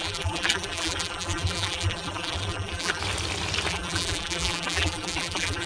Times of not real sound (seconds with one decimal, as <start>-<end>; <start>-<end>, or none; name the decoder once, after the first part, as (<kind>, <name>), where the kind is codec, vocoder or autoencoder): 0.0-3.0 (vocoder, BigVGAN v2); 3.7-5.7